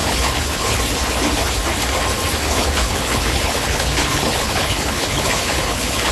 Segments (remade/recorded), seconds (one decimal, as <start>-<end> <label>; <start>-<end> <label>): 0.0-0.8 remade; 0.8-2.4 recorded; 2.4-6.1 remade